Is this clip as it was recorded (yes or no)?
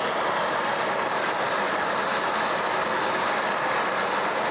yes